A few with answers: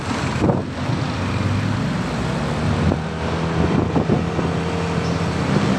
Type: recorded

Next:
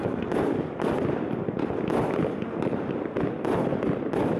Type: recorded